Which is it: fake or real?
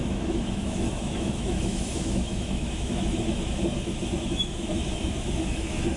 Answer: fake